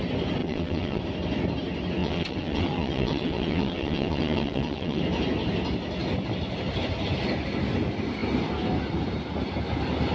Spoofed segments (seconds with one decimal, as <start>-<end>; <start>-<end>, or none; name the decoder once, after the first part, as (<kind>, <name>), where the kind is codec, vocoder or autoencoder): 0.4-1.0 (vocoder, WaveNeXt); 2.0-5.0